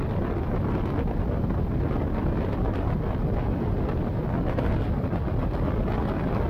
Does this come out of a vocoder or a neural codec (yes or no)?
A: no